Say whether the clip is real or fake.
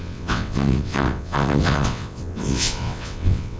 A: fake